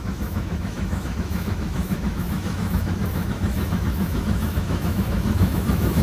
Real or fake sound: fake